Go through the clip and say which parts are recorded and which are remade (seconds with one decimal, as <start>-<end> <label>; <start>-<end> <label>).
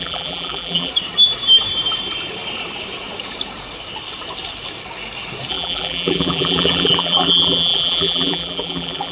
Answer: 0.0-0.9 remade; 0.9-5.5 recorded; 5.5-9.1 remade